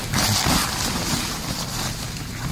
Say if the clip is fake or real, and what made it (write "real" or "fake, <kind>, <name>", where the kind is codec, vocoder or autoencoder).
real